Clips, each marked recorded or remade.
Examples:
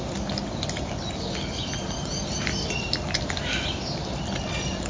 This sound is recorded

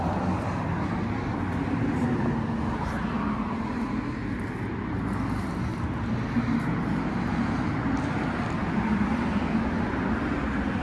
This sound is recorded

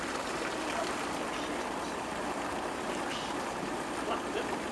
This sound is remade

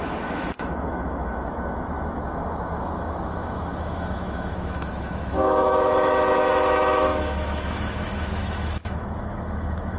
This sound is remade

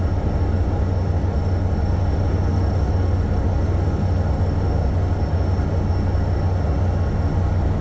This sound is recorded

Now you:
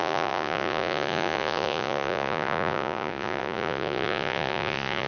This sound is remade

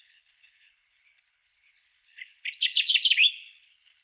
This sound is remade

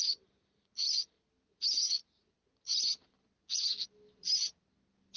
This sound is recorded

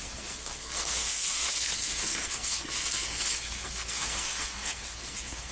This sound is remade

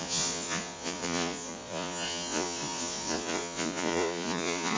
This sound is remade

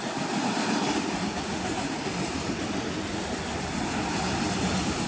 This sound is recorded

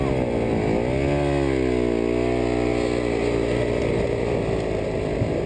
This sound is recorded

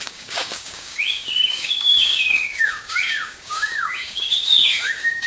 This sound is remade